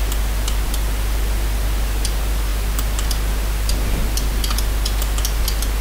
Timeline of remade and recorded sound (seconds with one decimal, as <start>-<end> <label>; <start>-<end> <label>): 0.0-5.8 recorded